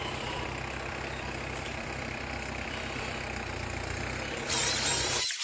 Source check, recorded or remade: remade